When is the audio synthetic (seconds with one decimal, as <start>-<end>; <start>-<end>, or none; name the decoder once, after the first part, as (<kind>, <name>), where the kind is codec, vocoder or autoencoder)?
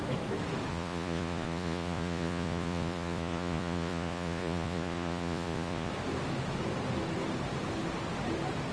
0.7-5.9 (vocoder, Vocos)